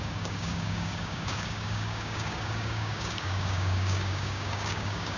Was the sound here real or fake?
fake